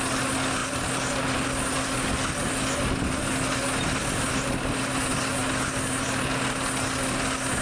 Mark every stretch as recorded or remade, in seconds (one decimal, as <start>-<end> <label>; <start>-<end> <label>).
0.0-7.6 recorded